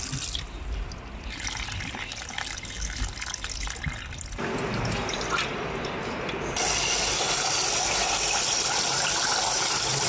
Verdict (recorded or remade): recorded